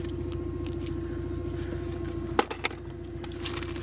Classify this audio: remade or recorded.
recorded